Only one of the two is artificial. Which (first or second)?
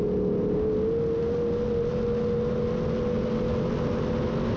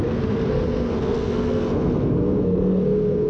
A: second